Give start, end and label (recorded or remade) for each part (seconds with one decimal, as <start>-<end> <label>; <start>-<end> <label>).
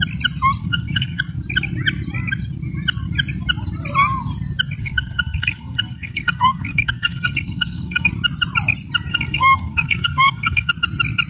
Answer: 0.0-0.6 recorded; 0.6-1.2 remade; 1.2-4.8 recorded; 4.8-8.1 remade; 8.1-9.1 recorded; 9.1-10.7 remade; 10.7-11.3 recorded